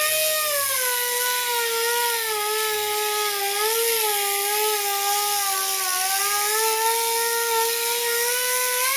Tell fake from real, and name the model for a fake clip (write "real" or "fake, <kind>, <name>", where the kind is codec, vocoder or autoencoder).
real